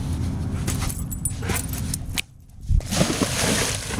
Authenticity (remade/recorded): recorded